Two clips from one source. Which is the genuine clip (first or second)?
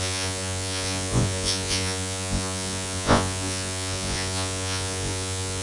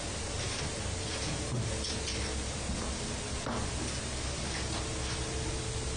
second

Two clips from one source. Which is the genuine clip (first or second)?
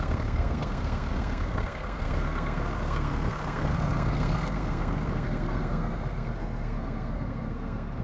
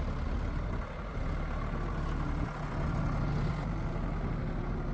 second